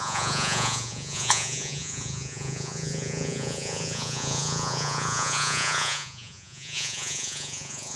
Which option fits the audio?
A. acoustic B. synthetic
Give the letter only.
B